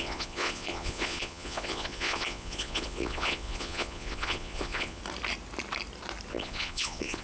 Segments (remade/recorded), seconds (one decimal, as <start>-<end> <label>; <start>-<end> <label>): 0.0-5.0 remade; 5.0-6.3 recorded; 6.3-7.2 remade